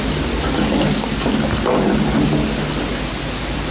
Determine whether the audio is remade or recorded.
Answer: recorded